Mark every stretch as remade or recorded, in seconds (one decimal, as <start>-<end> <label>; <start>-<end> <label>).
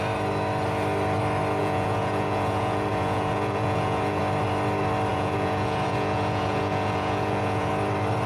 0.0-1.6 recorded; 1.6-4.2 remade; 4.2-5.1 recorded; 5.1-7.7 remade; 7.7-8.3 recorded